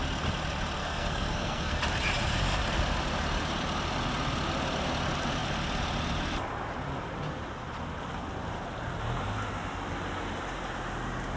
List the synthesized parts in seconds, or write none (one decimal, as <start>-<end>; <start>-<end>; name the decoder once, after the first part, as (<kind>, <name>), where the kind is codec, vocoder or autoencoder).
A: 0.8-1.8 (codec, SNAC)